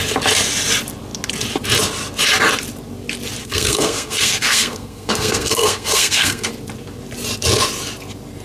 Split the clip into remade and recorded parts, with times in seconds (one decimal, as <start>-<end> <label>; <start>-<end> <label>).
0.0-3.4 recorded; 3.4-6.5 remade; 6.5-8.4 recorded